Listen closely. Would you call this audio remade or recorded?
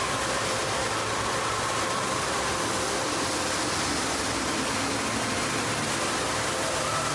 recorded